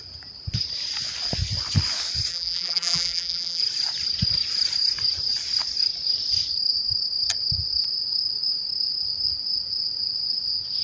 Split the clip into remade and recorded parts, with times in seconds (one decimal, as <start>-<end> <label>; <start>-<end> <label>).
0.0-2.3 recorded; 2.3-3.6 remade; 3.6-10.8 recorded